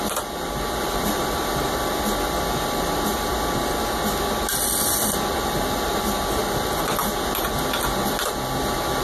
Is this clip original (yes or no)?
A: yes